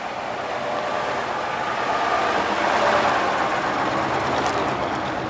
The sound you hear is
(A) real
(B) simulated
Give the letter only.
A